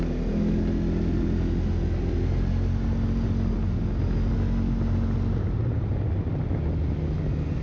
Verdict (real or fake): real